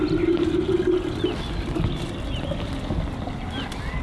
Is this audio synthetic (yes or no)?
no